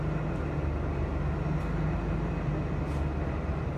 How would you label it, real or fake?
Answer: real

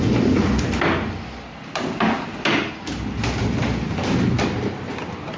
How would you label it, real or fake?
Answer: real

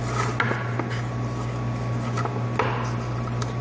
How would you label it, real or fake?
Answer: real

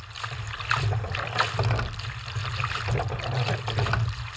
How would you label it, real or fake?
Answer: real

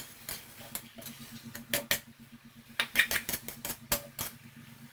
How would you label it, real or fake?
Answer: real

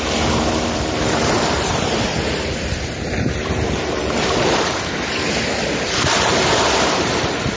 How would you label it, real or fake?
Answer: fake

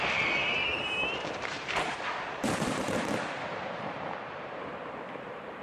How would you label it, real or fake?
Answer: fake